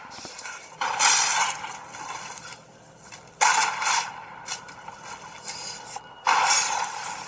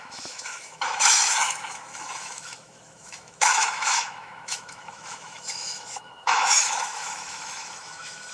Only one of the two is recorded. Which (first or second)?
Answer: first